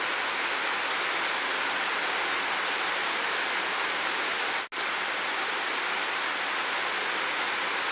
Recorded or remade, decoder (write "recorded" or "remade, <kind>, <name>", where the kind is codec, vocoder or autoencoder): recorded